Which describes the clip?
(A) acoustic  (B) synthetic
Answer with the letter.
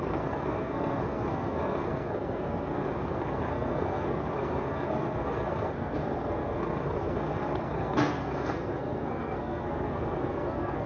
B